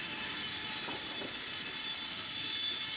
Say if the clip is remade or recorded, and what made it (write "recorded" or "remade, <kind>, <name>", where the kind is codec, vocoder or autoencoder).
recorded